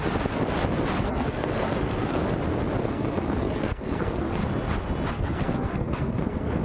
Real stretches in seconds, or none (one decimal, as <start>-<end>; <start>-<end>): 0.0-1.0; 2.2-2.8; 4.4-5.1